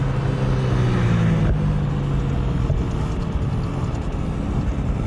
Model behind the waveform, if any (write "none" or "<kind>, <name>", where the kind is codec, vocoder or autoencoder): none